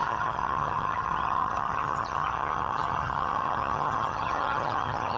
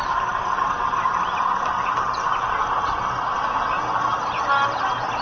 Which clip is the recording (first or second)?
second